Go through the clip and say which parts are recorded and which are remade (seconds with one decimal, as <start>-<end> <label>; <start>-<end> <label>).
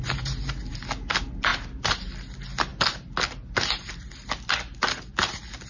0.0-5.7 recorded